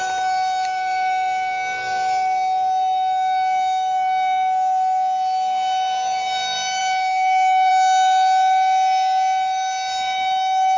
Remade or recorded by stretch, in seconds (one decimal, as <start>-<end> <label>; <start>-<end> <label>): 0.0-10.8 recorded